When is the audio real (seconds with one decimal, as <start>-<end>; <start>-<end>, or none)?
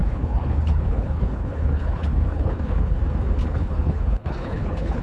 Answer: 3.0-3.4